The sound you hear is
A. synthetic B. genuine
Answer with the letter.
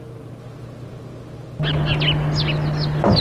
B